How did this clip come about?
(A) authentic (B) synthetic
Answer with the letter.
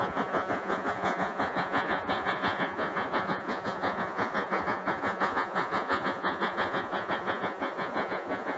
B